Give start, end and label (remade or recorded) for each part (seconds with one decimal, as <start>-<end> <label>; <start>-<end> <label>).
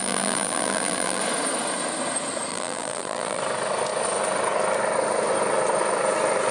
0.0-1.2 remade; 1.2-2.5 recorded; 2.5-3.4 remade; 3.4-6.5 recorded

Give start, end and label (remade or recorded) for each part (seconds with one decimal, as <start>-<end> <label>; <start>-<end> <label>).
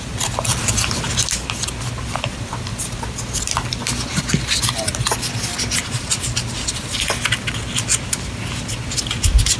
0.0-9.6 recorded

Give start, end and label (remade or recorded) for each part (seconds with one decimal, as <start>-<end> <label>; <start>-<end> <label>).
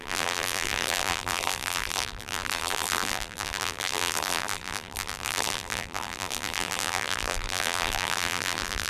0.0-8.9 remade